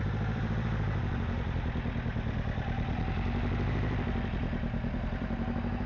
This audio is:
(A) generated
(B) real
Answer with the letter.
A